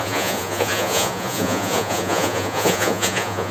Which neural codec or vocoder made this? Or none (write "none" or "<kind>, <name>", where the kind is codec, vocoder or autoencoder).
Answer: vocoder, Vocos